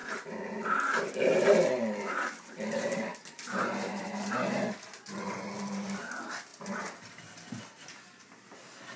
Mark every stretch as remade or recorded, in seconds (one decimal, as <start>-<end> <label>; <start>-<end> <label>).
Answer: 0.0-9.0 recorded